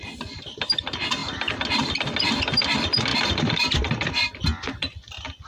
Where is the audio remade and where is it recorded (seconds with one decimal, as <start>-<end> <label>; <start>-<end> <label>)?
0.0-3.1 recorded; 3.1-4.4 remade; 4.4-5.5 recorded